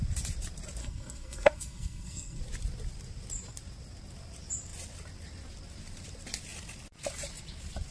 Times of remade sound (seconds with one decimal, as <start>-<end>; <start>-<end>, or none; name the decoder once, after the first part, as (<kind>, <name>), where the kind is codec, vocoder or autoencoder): 0.8-2.4 (codec, SNAC)